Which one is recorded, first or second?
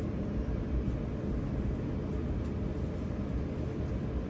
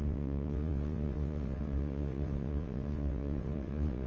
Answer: first